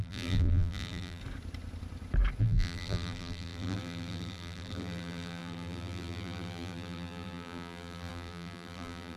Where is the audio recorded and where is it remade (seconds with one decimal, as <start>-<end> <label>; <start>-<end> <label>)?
0.0-1.2 remade; 1.2-2.4 recorded; 2.4-9.2 remade